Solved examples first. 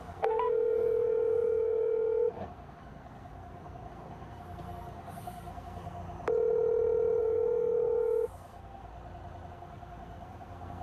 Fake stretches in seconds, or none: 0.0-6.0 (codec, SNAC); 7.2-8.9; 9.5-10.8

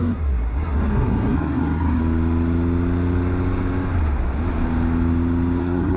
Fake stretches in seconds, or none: 0.0-2.0 (codec, SNAC); 5.6-6.0

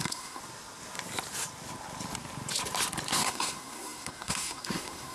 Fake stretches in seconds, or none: 0.0-0.4 (codec, SNAC); 3.1-5.1